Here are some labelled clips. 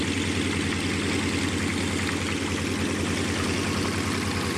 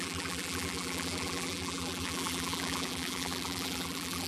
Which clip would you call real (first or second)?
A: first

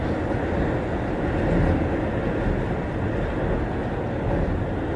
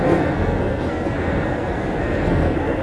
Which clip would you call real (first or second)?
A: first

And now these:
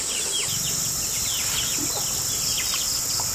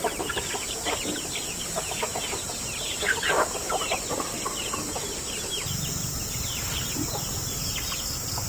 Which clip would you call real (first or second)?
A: first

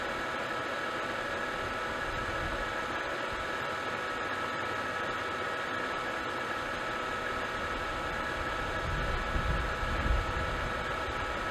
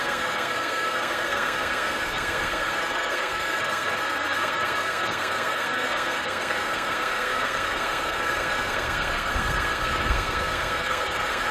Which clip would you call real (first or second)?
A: first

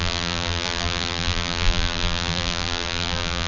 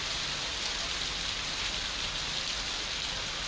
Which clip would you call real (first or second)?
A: second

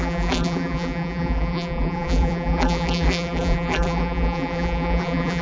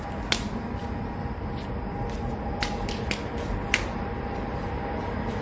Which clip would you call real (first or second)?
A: second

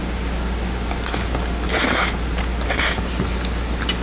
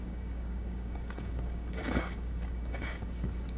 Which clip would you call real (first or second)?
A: first